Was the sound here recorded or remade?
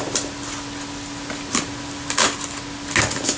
recorded